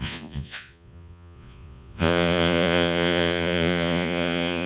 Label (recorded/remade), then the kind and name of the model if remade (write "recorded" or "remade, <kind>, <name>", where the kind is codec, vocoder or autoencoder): remade, vocoder, Vocos